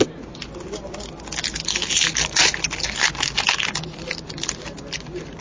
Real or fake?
real